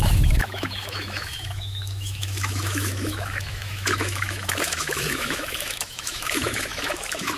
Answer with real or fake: fake